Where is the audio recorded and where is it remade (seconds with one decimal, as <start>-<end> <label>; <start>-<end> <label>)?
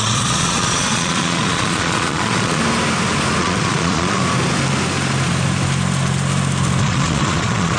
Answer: 0.0-2.6 remade; 2.6-3.4 recorded; 3.4-4.2 remade; 4.2-6.8 recorded; 6.8-7.8 remade